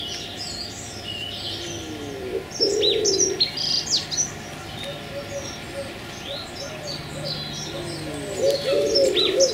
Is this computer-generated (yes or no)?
no